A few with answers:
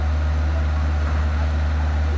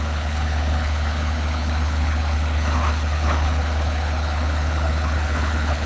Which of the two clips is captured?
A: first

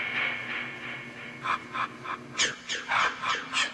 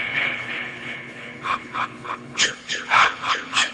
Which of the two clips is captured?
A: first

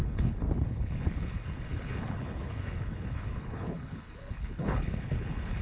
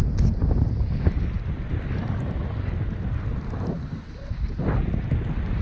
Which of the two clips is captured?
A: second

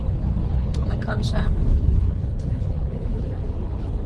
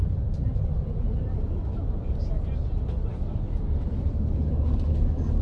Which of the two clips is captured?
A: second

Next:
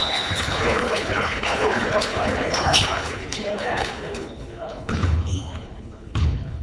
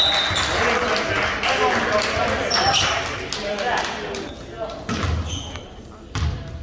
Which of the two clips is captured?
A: second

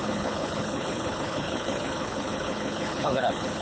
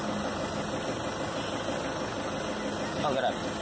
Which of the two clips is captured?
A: second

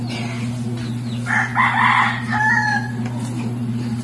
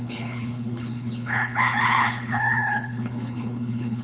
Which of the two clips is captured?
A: first